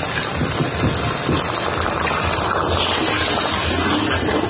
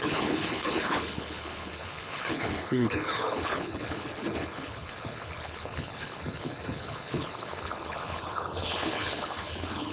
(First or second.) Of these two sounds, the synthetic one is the second